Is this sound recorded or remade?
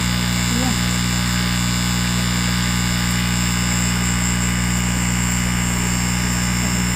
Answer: recorded